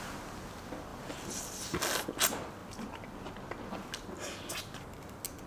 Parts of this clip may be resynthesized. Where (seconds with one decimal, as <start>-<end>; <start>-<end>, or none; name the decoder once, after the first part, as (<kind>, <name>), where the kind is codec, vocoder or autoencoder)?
none